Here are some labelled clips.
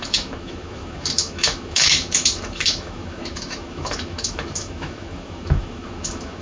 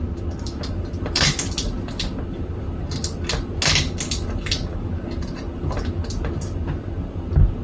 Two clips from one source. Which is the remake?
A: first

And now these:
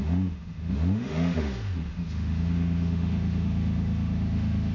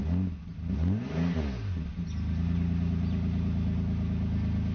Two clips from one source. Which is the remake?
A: first